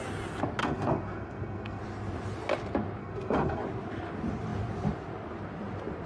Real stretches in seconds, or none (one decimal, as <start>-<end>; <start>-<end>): 0.0-0.6; 1.8-3.0; 3.6-6.1